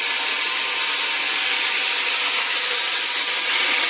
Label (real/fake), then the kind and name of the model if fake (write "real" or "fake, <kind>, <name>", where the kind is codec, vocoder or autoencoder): real